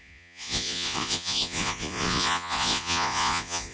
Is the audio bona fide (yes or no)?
no